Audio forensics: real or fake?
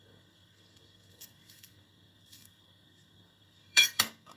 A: fake